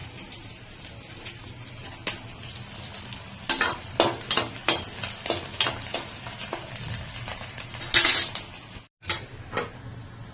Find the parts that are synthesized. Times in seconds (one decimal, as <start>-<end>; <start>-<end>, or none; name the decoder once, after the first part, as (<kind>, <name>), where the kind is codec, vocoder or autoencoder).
0.0-1.7 (vocoder, BigVGAN v2); 5.9-6.5; 7.3-7.8